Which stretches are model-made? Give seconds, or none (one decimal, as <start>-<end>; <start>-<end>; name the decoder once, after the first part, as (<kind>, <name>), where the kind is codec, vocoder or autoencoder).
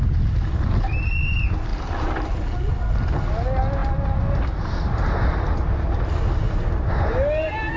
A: none